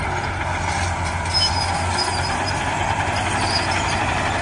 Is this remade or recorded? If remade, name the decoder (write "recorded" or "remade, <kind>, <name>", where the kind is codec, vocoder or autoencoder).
recorded